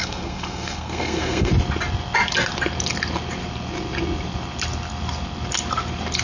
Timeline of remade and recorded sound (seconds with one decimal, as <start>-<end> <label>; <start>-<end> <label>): 0.0-1.5 remade; 1.5-6.2 recorded